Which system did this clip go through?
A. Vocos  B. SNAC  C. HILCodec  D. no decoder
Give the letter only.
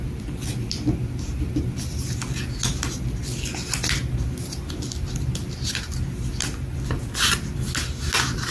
D